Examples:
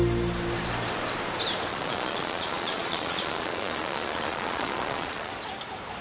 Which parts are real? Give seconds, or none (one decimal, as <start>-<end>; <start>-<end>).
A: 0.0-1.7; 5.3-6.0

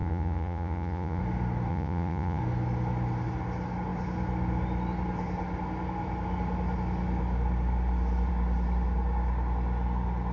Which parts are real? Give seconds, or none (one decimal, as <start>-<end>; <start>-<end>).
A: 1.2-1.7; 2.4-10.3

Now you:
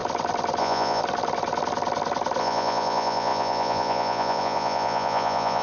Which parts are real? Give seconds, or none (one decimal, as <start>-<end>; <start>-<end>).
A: 0.0-0.6; 1.0-2.4

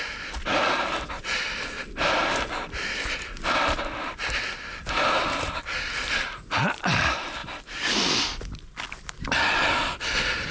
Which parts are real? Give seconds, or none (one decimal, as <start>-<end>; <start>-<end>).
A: 0.0-10.5